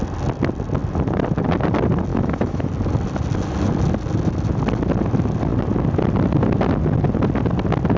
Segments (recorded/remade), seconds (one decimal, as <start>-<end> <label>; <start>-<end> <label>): 0.0-2.1 recorded; 2.1-2.7 remade; 2.7-8.0 recorded